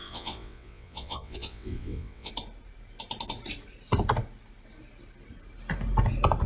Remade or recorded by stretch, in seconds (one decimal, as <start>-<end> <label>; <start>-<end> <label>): 0.0-2.3 remade; 2.3-6.5 recorded